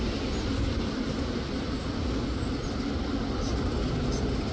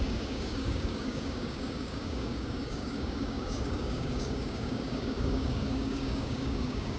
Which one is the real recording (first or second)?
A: first